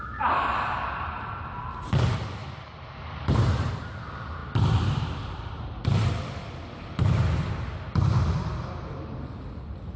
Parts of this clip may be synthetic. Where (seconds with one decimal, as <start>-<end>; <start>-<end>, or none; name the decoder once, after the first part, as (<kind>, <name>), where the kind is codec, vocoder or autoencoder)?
2.4-3.7 (vocoder, BigVGAN v2)